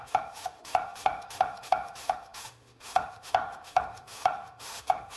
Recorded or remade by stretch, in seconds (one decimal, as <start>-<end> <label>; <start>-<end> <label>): 0.0-5.2 remade